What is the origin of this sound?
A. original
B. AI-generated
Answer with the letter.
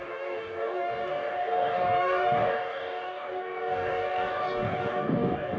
B